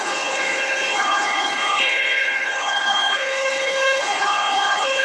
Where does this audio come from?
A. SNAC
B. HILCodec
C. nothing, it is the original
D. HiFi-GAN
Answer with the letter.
B